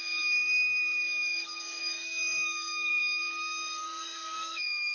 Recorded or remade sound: remade